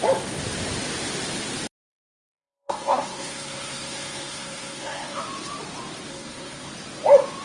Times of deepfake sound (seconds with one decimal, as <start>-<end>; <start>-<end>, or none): 1.9-5.2; 6.1-6.7